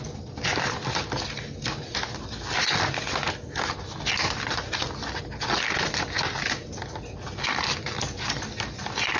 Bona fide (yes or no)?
yes